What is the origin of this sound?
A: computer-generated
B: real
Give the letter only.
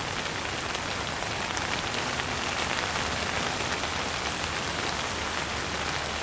B